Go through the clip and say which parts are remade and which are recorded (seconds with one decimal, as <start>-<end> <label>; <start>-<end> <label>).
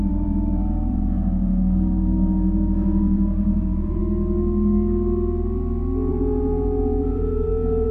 0.0-4.0 remade; 4.0-6.1 recorded; 6.1-7.9 remade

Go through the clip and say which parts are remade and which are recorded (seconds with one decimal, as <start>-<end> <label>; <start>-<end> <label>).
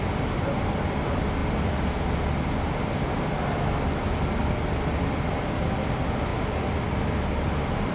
0.0-7.9 recorded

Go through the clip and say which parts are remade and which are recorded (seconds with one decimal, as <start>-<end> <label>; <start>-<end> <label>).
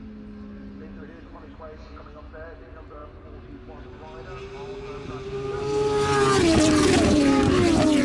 0.0-8.0 recorded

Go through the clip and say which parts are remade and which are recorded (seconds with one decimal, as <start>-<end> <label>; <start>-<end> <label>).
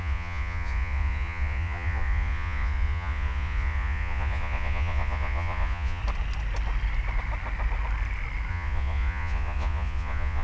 0.0-6.0 remade; 6.0-8.5 recorded; 8.5-10.4 remade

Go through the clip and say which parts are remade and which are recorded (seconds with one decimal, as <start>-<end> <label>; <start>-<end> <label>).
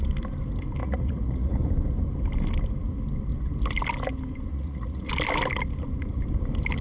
0.0-0.8 recorded; 0.8-1.6 remade; 1.6-4.5 recorded; 4.5-5.1 remade; 5.1-6.8 recorded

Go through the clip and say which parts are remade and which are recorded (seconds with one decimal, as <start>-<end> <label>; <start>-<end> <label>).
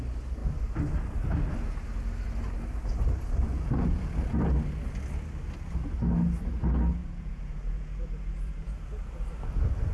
0.0-3.4 recorded; 3.4-4.5 remade; 4.5-7.0 recorded; 7.0-9.3 remade; 9.3-9.9 recorded